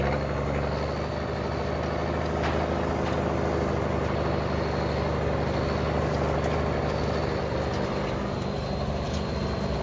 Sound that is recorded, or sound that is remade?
recorded